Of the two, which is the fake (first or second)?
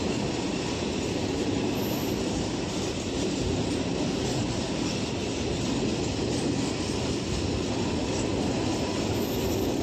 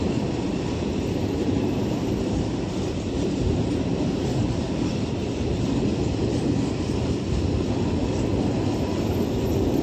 second